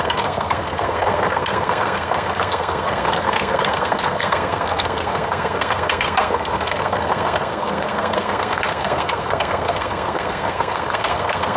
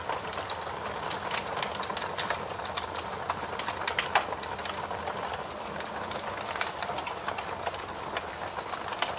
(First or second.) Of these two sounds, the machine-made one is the first